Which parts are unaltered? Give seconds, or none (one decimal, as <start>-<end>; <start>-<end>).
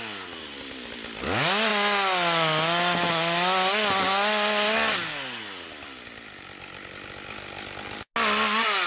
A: 0.0-8.9